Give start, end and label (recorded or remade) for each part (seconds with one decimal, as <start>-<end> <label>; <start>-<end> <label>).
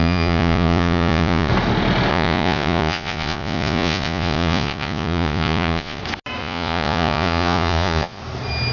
0.0-1.5 remade; 1.5-2.1 recorded; 2.1-6.0 remade; 6.0-6.4 recorded; 6.4-8.2 remade; 8.2-8.7 recorded